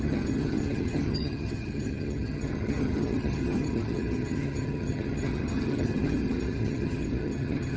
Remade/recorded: remade